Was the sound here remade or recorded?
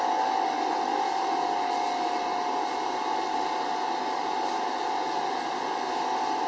recorded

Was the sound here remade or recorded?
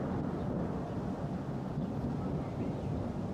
recorded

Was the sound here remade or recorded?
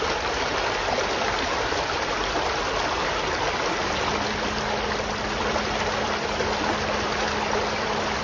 recorded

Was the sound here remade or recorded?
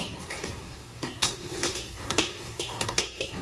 remade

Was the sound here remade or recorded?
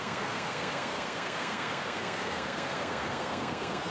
remade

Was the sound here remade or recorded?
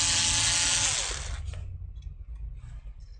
recorded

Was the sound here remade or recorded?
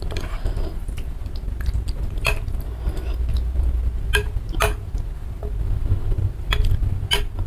recorded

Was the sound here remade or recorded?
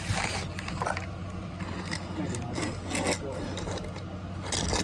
recorded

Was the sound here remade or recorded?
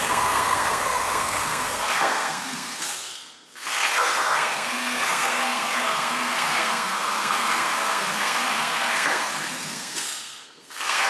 remade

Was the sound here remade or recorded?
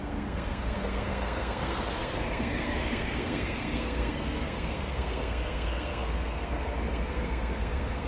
remade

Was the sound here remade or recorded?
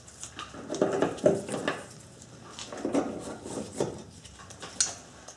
recorded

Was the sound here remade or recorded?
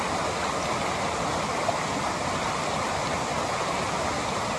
recorded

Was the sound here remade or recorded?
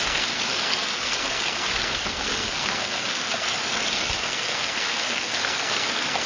remade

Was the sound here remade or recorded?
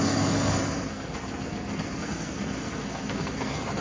remade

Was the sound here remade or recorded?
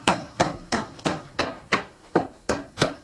remade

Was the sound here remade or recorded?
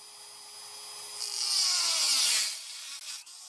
recorded